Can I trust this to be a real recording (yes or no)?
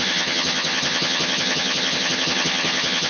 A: no